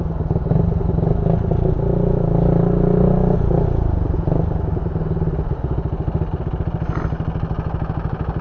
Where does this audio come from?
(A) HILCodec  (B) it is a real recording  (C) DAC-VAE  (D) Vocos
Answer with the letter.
B